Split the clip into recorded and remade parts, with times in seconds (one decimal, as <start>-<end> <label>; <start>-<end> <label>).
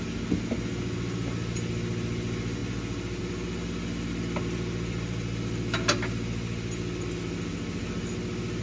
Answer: 0.0-8.6 recorded